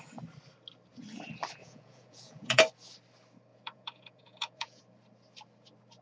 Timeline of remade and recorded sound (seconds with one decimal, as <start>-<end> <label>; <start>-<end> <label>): 0.0-1.6 recorded; 1.6-2.6 remade; 2.6-3.5 recorded; 3.5-4.8 remade; 4.8-6.0 recorded